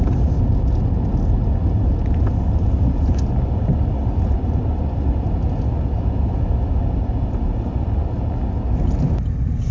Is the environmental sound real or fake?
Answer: real